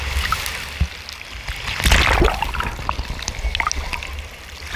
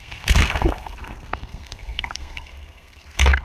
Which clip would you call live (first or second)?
first